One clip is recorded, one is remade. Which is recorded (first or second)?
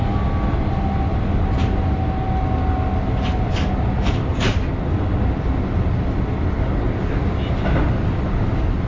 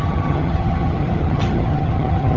first